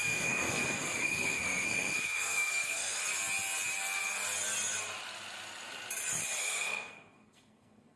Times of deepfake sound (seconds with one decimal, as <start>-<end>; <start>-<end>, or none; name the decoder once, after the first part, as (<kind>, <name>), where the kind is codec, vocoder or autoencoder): 0.0-3.0 (codec, SNAC); 6.4-8.0